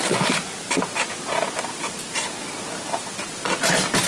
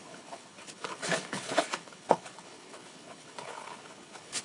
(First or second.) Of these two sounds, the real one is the first